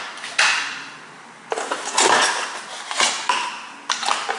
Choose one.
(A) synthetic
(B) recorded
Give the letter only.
B